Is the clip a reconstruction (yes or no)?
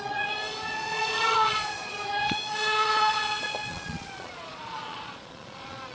yes